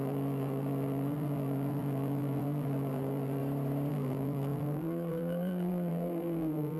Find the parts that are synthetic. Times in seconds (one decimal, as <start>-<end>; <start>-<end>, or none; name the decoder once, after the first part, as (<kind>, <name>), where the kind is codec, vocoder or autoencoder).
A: 0.0-3.4 (vocoder, BigVGAN v2); 3.9-6.8